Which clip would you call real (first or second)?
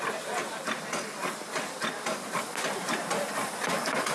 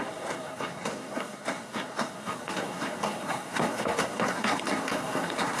first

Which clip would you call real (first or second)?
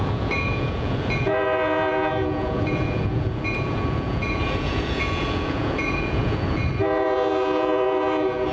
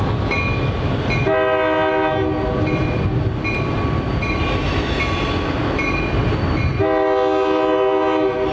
second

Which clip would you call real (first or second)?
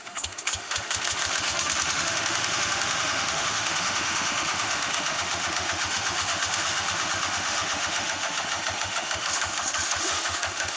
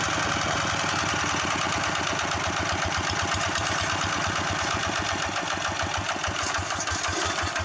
second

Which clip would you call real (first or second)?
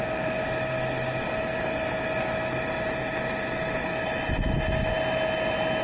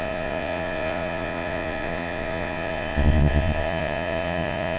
first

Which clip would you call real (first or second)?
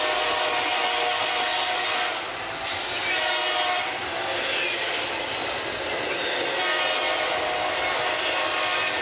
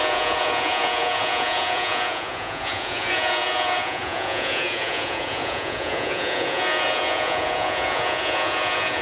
first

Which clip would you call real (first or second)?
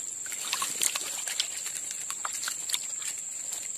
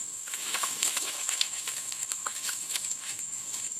first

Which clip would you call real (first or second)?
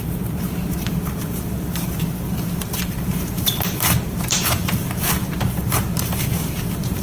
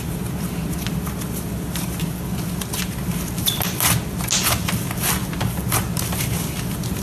second